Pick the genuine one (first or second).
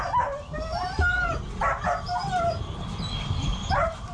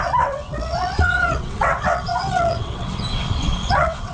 first